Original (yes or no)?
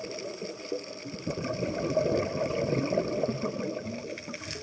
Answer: yes